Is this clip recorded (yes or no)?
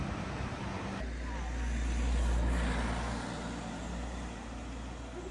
yes